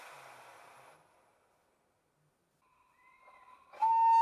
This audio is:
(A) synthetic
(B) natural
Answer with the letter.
B